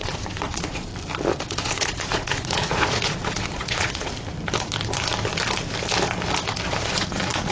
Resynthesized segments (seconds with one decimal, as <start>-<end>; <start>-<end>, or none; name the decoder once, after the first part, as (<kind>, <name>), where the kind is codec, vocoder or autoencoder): 0.0-0.9 (vocoder, Vocos); 1.5-4.1; 6.7-7.5